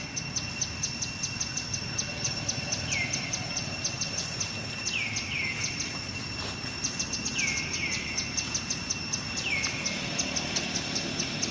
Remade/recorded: recorded